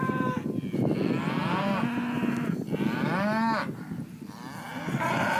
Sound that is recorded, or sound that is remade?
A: recorded